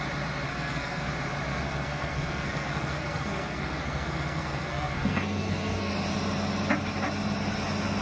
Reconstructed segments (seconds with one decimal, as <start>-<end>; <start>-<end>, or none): 0.5-1.1; 1.5-5.9